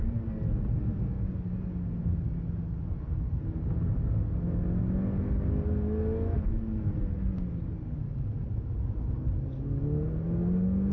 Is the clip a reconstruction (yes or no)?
no